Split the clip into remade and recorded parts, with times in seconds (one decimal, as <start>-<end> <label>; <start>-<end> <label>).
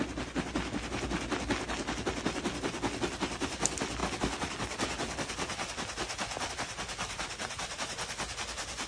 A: 0.0-8.9 recorded